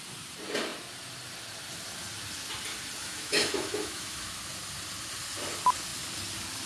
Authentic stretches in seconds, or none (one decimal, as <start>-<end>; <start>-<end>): 0.0-3.0; 4.4-6.7